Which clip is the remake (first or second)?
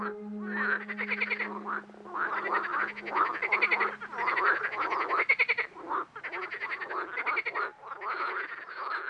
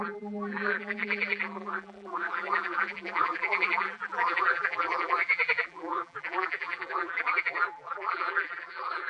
second